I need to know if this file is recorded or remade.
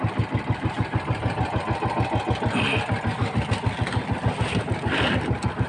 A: recorded